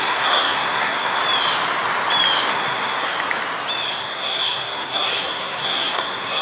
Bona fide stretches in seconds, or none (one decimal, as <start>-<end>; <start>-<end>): 1.2-2.5; 3.1-4.0